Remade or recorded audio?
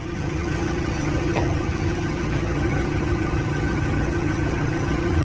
remade